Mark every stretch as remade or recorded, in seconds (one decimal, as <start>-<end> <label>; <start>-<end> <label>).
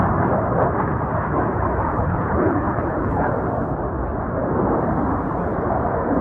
0.0-1.9 recorded; 1.9-3.3 remade; 3.3-6.2 recorded